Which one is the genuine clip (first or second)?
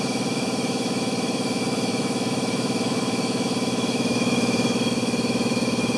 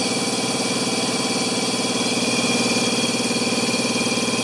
second